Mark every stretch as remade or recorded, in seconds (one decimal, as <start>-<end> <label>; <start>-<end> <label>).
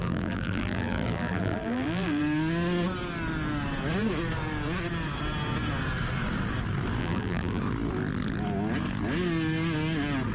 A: 0.0-2.2 remade; 2.2-7.0 recorded; 7.0-7.6 remade; 7.6-10.3 recorded